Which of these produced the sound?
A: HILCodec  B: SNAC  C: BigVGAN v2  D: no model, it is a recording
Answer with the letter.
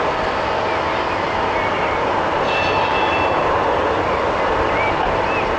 D